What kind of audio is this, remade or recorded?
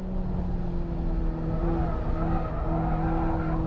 recorded